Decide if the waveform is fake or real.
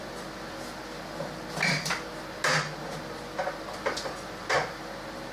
real